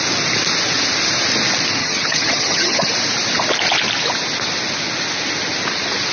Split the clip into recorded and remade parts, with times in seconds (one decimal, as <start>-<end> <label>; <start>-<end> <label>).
0.0-1.8 recorded; 1.8-2.9 remade; 2.9-6.1 recorded